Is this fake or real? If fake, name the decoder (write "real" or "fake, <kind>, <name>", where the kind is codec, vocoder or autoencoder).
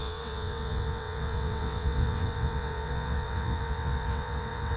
fake, vocoder, WaveNeXt